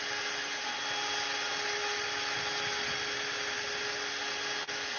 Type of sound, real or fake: real